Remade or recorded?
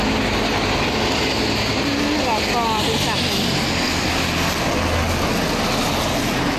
recorded